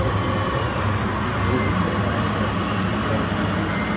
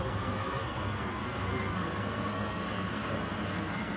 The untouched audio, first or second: first